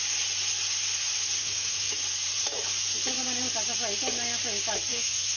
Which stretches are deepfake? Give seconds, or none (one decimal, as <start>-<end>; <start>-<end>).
1.4-2.0; 4.9-5.4